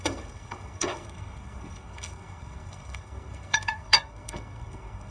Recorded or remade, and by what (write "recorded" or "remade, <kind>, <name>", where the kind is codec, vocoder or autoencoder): remade, codec, SNAC